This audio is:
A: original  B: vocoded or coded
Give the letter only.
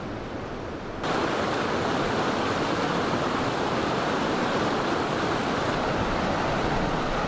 B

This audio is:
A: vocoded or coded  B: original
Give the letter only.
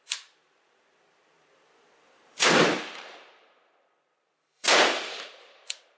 A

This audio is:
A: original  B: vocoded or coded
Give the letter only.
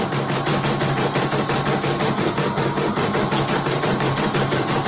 B